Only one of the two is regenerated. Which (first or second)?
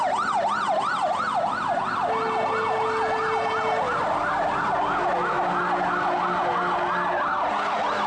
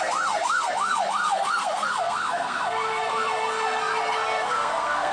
second